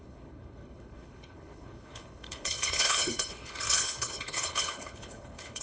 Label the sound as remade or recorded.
remade